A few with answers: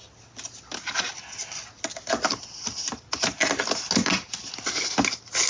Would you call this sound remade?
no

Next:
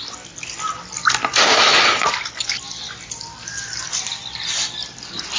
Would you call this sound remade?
no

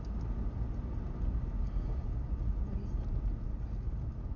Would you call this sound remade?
no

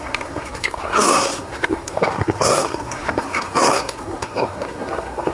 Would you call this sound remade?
yes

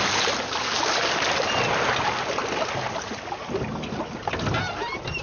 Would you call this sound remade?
no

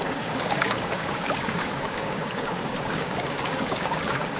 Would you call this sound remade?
yes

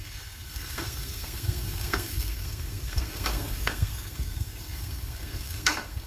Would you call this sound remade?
yes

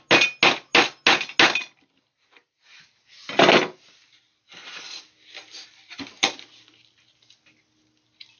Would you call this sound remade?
no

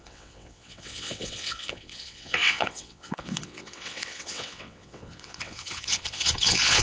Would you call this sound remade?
yes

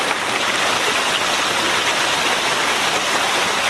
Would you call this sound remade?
no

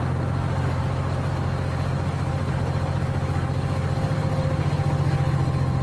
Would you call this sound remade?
no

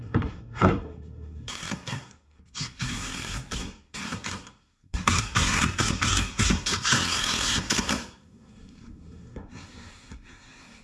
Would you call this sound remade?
yes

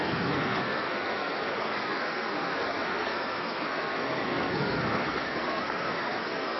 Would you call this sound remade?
yes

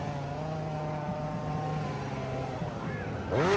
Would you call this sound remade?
no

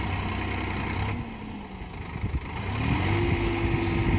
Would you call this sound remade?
no